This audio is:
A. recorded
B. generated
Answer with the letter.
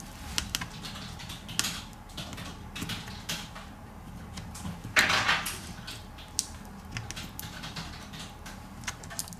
A